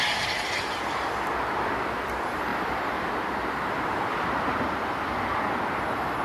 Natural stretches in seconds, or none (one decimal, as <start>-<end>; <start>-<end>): 0.0-2.5; 3.1-4.1; 5.4-6.2